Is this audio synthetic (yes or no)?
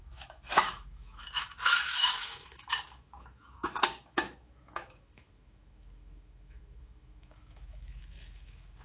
yes